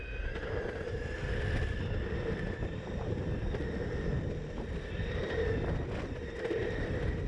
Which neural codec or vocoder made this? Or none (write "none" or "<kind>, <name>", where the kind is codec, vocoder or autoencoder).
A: none